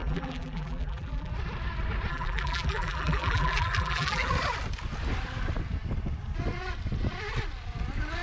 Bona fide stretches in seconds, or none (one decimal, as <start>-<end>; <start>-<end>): 1.3-2.1; 4.3-8.2